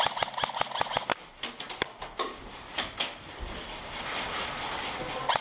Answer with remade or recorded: recorded